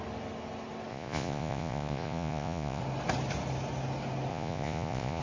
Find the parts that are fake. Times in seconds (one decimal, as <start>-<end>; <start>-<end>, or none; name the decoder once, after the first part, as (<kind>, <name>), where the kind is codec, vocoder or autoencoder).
0.9-2.8 (vocoder, Vocos); 4.3-5.2